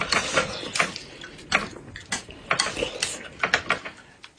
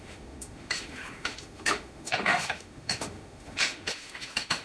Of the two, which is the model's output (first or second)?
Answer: second